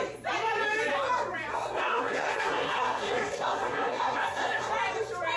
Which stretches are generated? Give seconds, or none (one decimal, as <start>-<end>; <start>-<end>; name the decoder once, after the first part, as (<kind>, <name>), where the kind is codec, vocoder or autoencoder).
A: 1.5-4.7 (codec, SNAC)